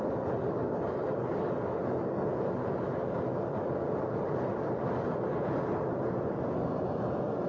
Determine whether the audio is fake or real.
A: real